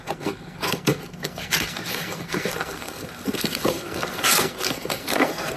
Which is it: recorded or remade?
remade